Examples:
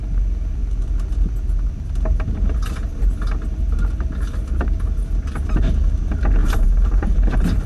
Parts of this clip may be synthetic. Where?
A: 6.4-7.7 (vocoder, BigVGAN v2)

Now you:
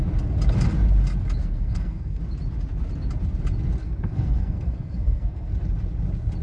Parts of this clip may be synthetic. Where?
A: 1.4-2.2 (codec, SNAC); 3.8-5.5

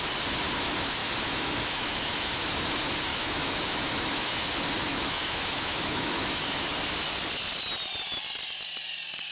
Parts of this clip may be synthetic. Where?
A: 1.0-2.3 (autoencoder, DAC-VAE); 3.1-4.4; 4.9-6.7

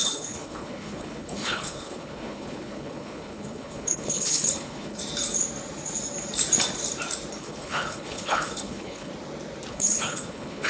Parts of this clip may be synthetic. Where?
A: 0.0-5.0 (codec, HILCodec); 7.4-9.1; 9.7-10.7

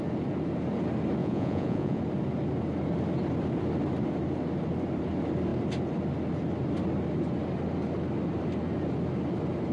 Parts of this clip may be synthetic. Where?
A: 1.2-2.0 (vocoder, Vocos)

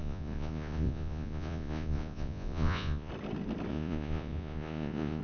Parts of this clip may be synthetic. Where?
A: 0.0-3.1 (vocoder, Vocos); 3.7-5.2